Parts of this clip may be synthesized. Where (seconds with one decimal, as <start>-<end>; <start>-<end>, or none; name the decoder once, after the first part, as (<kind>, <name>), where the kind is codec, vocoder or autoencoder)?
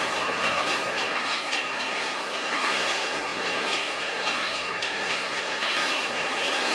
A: 0.0-6.7 (codec, SNAC)